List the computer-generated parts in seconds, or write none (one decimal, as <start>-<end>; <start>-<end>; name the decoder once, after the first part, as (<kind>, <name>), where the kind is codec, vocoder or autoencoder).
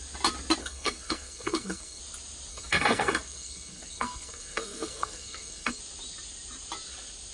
0.6-2.0 (codec, SNAC); 2.5-5.8